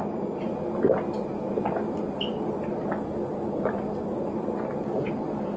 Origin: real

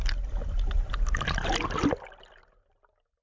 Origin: real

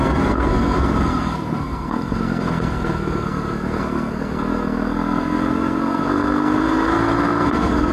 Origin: fake